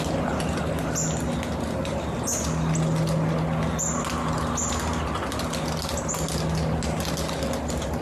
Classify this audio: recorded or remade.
recorded